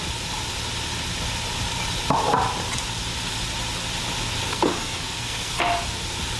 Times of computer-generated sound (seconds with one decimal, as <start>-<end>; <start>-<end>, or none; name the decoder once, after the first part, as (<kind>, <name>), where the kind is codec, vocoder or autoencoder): 4.5-5.6 (codec, SNAC)